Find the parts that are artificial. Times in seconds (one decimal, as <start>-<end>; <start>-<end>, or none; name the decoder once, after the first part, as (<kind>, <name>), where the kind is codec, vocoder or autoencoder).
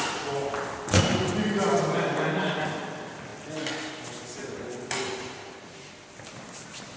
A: none